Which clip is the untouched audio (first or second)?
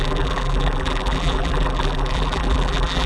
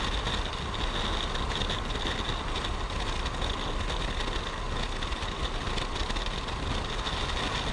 second